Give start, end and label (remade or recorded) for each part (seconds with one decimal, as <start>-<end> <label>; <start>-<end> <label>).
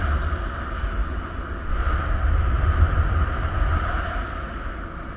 0.0-5.2 recorded